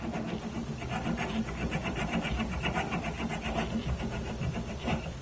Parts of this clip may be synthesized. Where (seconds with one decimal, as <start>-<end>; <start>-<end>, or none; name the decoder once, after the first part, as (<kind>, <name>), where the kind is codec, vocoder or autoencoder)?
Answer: 1.8-3.3 (vocoder, BigVGAN v2); 3.8-5.2